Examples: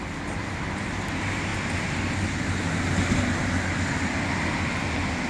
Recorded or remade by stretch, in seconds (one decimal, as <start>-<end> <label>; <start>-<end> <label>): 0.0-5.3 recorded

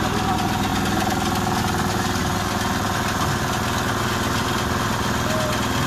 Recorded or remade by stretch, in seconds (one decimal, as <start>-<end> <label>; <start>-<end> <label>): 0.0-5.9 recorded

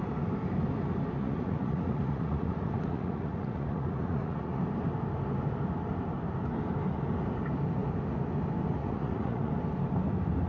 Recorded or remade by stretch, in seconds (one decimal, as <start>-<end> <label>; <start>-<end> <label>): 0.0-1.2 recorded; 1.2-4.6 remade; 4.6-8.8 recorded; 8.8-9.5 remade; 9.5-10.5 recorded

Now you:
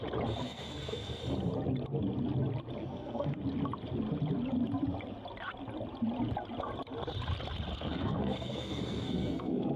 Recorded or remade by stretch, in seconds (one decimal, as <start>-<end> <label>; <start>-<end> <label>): 0.0-0.4 recorded; 0.4-1.2 remade; 1.2-2.8 recorded; 2.8-3.3 remade; 3.3-7.7 recorded; 7.7-9.8 remade

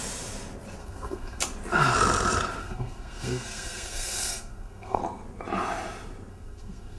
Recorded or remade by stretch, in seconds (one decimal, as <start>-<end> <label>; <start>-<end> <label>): 0.0-0.8 recorded; 0.8-1.4 remade; 1.4-2.6 recorded; 2.6-5.0 remade; 5.0-6.3 recorded; 6.3-7.0 remade

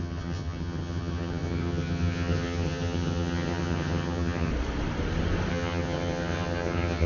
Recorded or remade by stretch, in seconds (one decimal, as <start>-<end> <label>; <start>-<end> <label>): 0.0-4.5 remade; 4.5-5.5 recorded; 5.5-7.1 remade

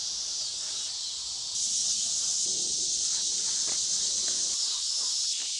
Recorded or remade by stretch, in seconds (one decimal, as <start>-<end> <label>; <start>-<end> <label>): 0.0-5.6 recorded